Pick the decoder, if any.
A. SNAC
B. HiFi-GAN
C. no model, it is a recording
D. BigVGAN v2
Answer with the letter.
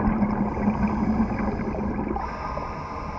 C